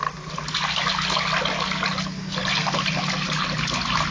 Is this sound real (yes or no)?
yes